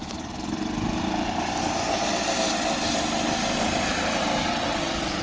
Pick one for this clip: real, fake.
real